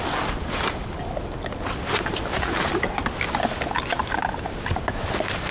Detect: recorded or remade recorded